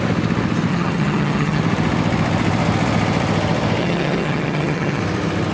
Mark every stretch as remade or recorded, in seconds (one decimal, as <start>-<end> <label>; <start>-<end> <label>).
0.0-0.7 recorded; 0.7-1.6 remade; 1.6-3.8 recorded; 3.8-5.0 remade; 5.0-5.5 recorded